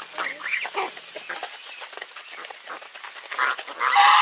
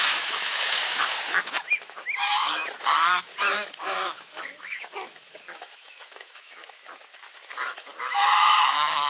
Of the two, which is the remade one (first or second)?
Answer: second